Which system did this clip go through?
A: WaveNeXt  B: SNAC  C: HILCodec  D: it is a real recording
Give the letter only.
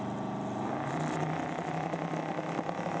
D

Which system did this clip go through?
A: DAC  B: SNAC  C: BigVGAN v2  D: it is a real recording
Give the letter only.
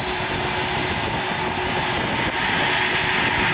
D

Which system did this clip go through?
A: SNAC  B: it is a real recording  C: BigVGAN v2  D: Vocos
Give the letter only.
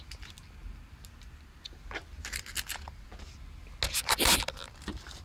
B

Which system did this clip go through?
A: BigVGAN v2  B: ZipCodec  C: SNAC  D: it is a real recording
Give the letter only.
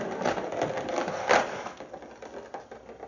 D